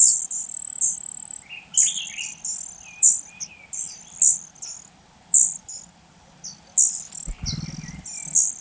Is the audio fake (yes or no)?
no